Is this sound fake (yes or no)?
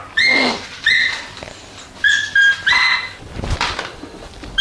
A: no